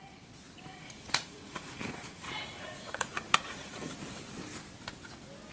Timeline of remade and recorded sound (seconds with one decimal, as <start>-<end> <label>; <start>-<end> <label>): 0.0-0.7 recorded; 0.7-3.9 remade; 3.9-5.5 recorded